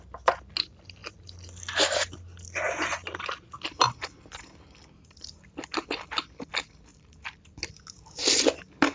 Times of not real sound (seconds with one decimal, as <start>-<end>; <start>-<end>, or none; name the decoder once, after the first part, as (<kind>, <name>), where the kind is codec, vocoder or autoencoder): none